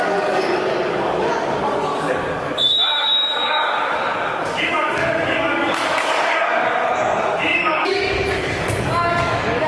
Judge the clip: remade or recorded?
remade